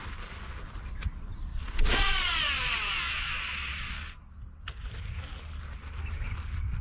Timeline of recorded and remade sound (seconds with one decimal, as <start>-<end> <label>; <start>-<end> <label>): 0.0-1.5 recorded; 1.5-3.9 remade; 3.9-6.8 recorded